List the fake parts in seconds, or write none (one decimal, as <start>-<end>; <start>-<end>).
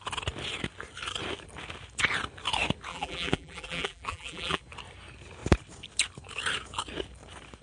2.9-4.6